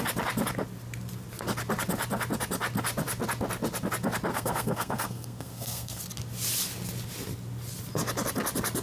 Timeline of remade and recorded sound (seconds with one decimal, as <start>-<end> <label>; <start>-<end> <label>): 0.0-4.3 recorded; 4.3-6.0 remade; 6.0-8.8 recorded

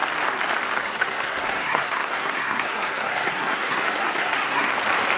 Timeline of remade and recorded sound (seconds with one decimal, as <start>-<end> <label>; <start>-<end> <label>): 0.0-0.8 recorded; 0.8-4.7 remade; 4.7-5.2 recorded

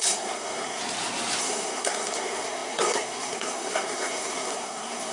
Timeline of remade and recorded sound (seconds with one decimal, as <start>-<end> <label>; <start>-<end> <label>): 0.0-0.8 remade; 0.8-1.4 recorded; 1.4-5.1 remade

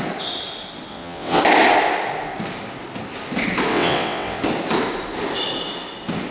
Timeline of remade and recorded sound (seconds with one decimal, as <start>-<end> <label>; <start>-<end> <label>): 0.0-0.9 recorded; 0.9-1.4 remade; 1.4-3.7 recorded; 3.7-4.4 remade; 4.4-6.3 recorded

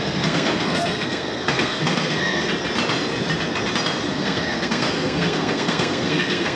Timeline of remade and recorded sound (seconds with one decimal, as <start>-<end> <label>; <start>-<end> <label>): 0.0-2.5 remade; 2.5-4.1 recorded; 4.1-6.6 remade

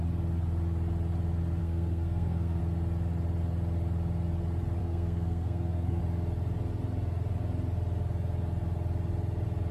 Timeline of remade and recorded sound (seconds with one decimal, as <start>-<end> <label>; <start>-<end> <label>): 0.0-1.6 recorded; 1.6-2.6 remade; 2.6-4.8 recorded; 4.8-6.0 remade; 6.0-9.7 recorded

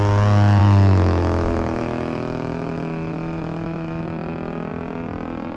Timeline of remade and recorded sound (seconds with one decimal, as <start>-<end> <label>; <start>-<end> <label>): 0.0-0.6 recorded; 0.6-4.0 remade; 4.0-5.6 recorded

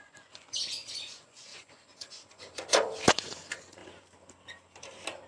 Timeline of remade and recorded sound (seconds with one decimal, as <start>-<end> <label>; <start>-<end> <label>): 0.0-3.8 remade; 3.8-5.3 recorded